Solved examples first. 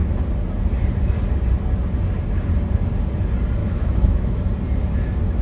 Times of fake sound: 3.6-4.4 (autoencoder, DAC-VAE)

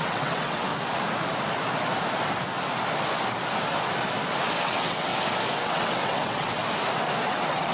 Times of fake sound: 0.0-0.7 (vocoder, WaveNeXt); 4.6-5.1; 5.6-6.6; 7.3-7.7